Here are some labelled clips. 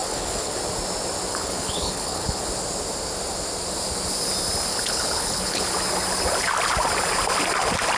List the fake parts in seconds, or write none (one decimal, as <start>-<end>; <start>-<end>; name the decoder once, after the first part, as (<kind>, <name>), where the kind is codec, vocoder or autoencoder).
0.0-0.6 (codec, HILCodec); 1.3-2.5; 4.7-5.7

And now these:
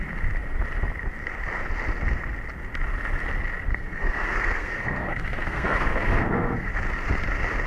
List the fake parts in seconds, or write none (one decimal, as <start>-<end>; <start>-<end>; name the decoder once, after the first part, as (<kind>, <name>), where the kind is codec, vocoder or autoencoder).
3.7-6.7 (codec, SNAC)

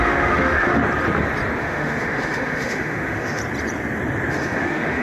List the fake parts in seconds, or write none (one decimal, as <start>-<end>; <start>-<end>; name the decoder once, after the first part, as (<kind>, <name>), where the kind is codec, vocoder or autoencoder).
0.0-0.8 (autoencoder, DAC-VAE); 1.6-3.4; 4.3-5.0